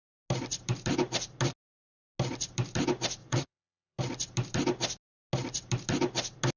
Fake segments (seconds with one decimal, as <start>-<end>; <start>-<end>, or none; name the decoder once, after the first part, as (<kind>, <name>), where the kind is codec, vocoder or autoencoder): 3.2-4.0 (vocoder, Vocos)